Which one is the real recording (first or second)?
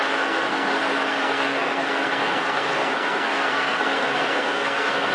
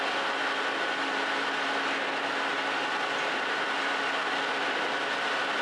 second